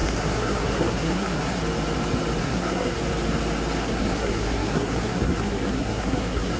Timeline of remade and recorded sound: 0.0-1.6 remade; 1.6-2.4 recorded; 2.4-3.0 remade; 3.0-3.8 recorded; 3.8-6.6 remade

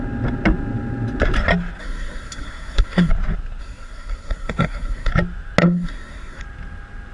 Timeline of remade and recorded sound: 0.0-1.8 recorded; 1.8-3.1 remade; 3.1-3.6 recorded; 3.6-5.1 remade; 5.1-5.6 recorded; 5.6-6.4 remade; 6.4-7.1 recorded

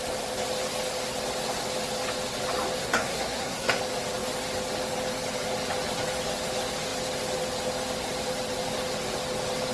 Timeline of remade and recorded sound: 0.0-2.8 recorded; 2.8-3.8 remade; 3.8-9.7 recorded

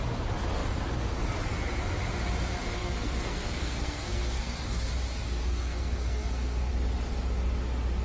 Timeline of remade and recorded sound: 0.0-2.8 recorded; 2.8-5.0 remade; 5.0-5.4 recorded; 5.4-6.7 remade; 6.7-8.0 recorded

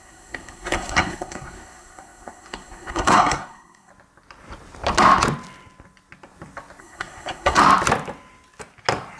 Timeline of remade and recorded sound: 0.0-3.9 remade; 3.9-6.8 recorded; 6.8-7.6 remade; 7.6-9.2 recorded

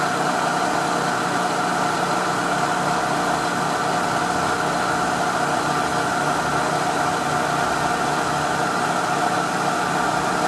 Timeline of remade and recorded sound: 0.0-10.5 recorded